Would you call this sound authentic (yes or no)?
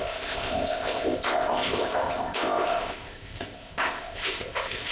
no